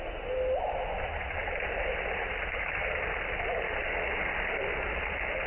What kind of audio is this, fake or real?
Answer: real